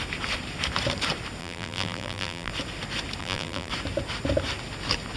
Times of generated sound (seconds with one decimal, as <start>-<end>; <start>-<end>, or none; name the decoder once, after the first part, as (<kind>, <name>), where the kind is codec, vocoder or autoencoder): 1.4-2.5 (vocoder, BigVGAN v2); 3.2-3.7